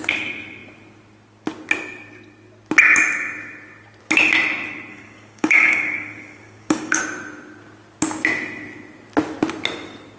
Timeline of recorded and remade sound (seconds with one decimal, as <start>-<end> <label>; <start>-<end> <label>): 0.0-4.9 recorded; 4.9-7.0 remade; 7.0-10.2 recorded